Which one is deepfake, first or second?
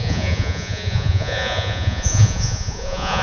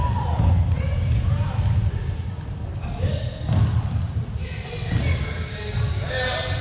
first